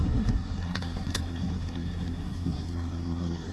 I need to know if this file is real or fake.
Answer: fake